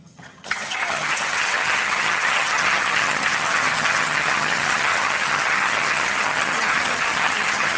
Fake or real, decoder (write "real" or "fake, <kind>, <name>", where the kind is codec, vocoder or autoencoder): fake, vocoder, HiFi-GAN